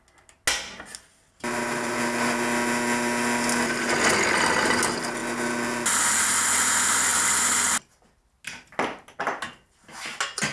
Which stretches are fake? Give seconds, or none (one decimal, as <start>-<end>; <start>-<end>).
none